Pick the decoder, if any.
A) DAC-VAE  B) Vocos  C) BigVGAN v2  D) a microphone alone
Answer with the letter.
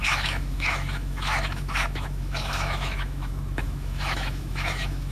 A